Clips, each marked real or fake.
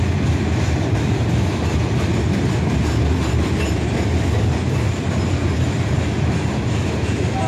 real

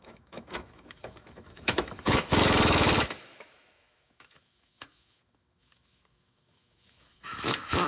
fake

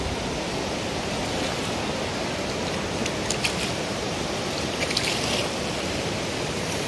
real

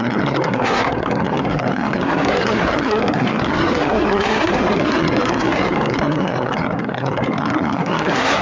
fake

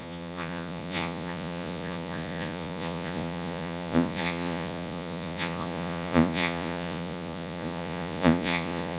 fake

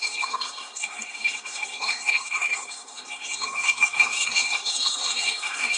fake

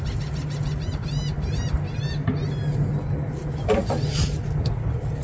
real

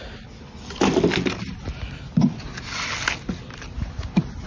real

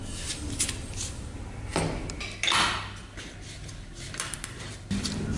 real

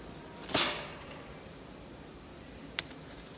fake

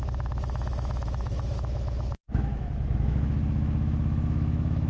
fake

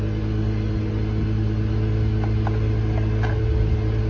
real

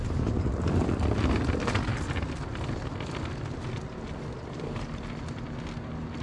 real